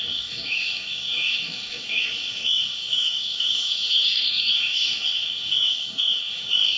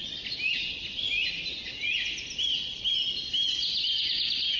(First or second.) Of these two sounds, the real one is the second